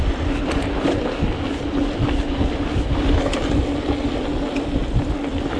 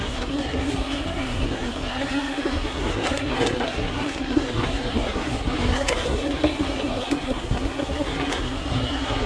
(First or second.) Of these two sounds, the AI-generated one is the second